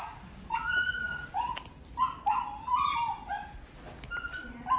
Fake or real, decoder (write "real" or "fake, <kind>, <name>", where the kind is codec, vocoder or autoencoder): real